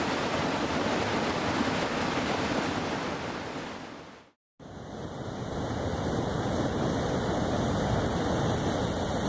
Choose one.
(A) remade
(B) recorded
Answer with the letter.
B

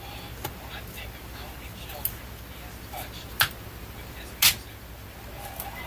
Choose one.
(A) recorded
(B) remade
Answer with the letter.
A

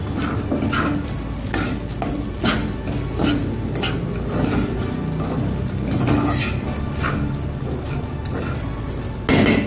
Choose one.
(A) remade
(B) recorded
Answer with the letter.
B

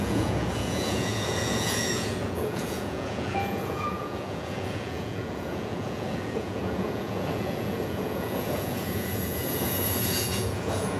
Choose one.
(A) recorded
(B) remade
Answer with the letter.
B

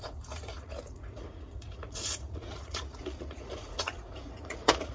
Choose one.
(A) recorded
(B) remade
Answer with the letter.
B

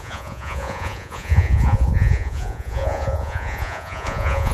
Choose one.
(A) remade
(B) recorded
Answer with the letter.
A